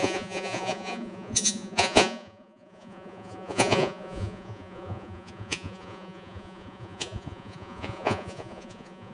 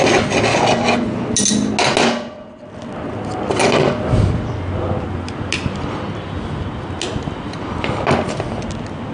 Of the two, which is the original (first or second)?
second